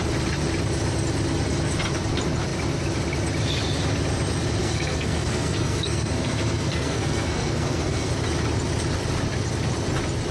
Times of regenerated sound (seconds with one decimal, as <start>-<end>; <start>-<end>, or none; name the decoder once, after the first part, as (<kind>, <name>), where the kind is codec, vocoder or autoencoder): 4.6-8.1 (codec, SNAC)